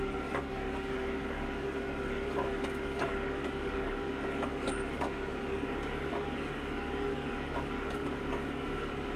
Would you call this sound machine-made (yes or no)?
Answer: yes